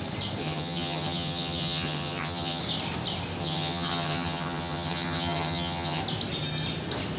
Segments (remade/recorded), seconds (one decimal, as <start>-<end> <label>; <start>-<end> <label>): 0.0-0.4 recorded; 0.4-2.6 remade; 2.6-3.4 recorded; 3.4-6.0 remade; 6.0-7.2 recorded